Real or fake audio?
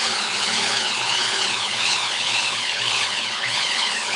fake